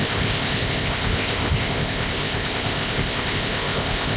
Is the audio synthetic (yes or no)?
yes